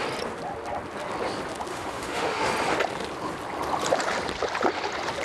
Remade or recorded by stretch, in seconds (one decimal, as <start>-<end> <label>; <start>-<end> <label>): 0.0-1.7 recorded; 1.7-2.5 remade; 2.5-5.2 recorded